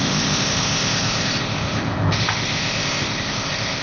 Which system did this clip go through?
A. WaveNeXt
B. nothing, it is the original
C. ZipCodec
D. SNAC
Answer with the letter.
C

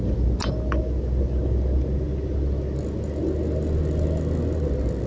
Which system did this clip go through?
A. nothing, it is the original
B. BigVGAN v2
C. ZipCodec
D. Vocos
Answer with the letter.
A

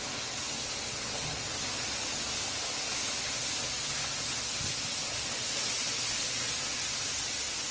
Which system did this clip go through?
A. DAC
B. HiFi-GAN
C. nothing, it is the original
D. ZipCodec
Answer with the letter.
C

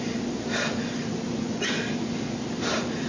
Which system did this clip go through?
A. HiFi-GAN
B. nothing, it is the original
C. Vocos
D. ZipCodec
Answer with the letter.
B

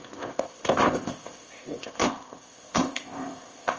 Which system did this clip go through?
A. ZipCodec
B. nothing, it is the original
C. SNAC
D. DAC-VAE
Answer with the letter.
A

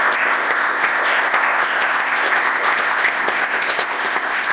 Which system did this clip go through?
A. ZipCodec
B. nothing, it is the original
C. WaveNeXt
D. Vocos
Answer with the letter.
A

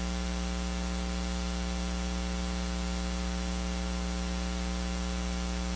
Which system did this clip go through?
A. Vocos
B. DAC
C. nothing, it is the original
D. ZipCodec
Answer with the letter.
C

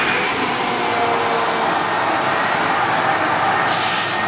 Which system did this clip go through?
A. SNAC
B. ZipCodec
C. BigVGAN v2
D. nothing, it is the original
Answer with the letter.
D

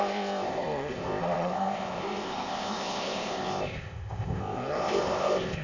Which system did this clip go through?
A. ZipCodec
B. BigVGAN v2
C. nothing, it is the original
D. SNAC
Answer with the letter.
A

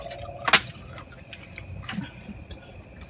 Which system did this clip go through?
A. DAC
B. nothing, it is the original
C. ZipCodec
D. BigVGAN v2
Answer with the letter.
B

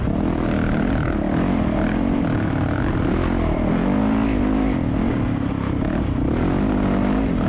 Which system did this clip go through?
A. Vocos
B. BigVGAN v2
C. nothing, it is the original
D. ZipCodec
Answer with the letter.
C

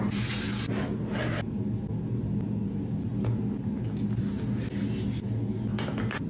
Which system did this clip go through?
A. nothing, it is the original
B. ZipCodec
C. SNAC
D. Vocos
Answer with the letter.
A